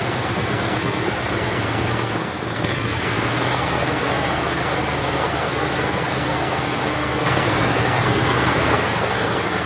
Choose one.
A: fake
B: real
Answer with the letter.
A